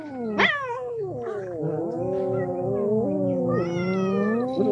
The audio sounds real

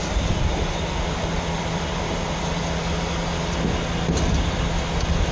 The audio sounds real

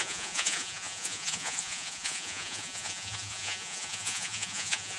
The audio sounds fake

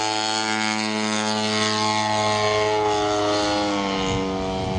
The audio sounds real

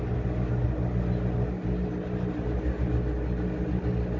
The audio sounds real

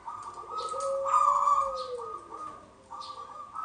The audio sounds real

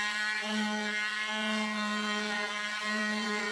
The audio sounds fake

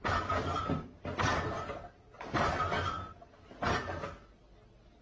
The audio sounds real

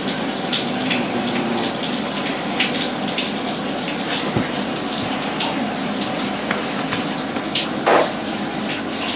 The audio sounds real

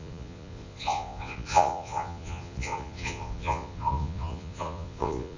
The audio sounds fake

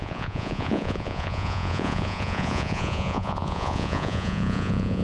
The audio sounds fake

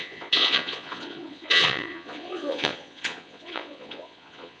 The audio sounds fake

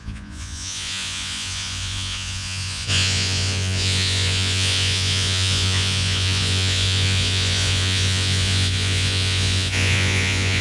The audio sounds fake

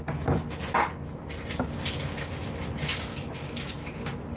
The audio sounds real